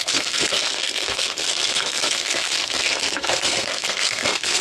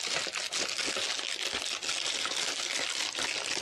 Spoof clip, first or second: first